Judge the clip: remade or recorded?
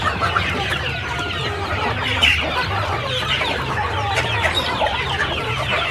remade